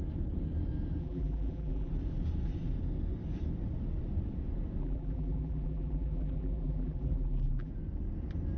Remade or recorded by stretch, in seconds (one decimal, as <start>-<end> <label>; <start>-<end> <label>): 0.0-1.0 recorded; 1.0-1.9 remade; 1.9-4.8 recorded; 4.8-7.7 remade; 7.7-8.6 recorded